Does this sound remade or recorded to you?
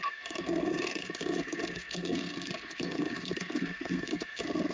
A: remade